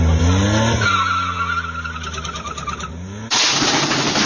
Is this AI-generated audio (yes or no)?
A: no